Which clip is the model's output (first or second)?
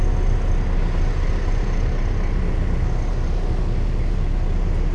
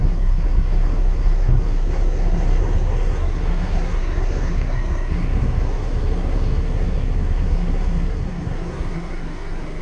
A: second